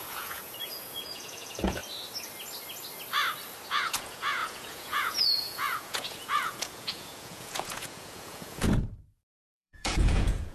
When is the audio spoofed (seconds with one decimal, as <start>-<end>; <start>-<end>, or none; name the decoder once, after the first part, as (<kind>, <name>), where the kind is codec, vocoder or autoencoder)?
0.0-1.8 (vocoder, Vocos); 3.7-10.5